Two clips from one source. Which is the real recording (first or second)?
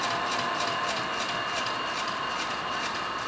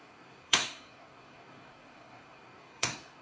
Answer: first